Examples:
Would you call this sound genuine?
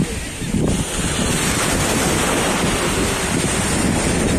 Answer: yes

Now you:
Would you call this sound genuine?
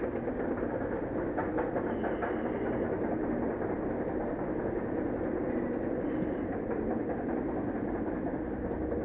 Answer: yes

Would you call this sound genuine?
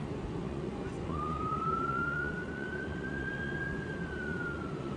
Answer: no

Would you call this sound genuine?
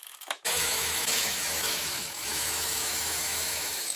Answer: no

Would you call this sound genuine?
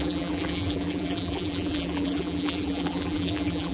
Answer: no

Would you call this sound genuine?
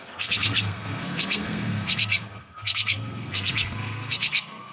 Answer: no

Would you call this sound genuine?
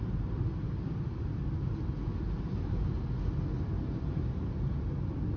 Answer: yes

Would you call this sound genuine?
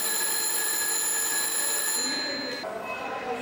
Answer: yes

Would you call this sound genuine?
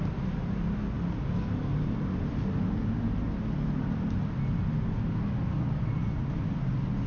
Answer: yes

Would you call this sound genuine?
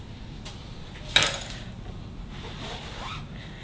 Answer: yes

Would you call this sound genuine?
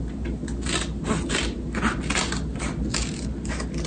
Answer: yes